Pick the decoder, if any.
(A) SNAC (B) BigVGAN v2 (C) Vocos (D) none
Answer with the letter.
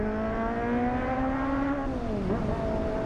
D